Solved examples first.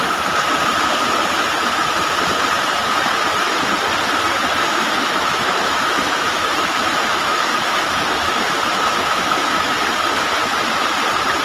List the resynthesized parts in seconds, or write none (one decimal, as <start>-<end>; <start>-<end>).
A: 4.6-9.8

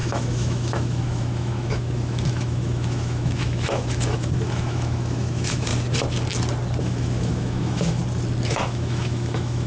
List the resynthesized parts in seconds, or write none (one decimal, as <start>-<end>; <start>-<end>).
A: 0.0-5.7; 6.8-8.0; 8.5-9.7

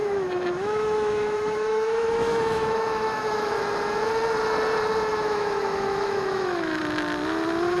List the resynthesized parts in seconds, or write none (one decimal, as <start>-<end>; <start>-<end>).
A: 0.0-3.6; 5.1-6.8